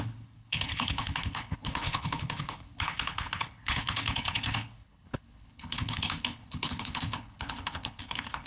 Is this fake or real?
fake